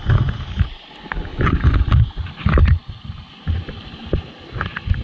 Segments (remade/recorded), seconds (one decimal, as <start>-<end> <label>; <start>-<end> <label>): 0.0-1.3 recorded; 1.3-2.2 remade; 2.2-5.0 recorded